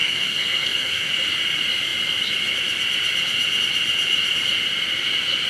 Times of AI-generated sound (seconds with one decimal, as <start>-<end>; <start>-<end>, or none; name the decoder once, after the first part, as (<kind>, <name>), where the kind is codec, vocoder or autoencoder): 0.0-1.1 (codec, SNAC)